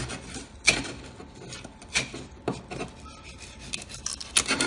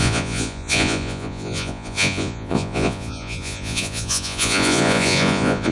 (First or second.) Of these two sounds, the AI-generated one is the second